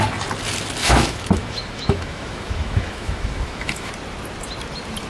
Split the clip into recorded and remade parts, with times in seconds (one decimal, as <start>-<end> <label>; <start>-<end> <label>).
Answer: 0.0-0.8 recorded; 0.8-3.9 remade; 3.9-5.1 recorded